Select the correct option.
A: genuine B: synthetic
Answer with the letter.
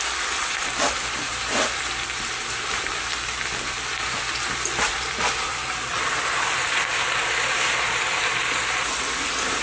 B